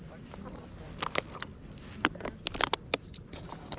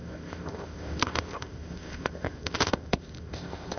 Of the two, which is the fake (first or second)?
second